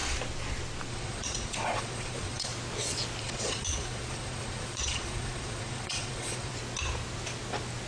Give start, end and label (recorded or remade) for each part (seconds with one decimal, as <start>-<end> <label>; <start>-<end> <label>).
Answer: 0.0-0.9 recorded; 0.9-2.5 remade; 2.5-3.2 recorded; 3.2-6.5 remade; 6.5-7.9 recorded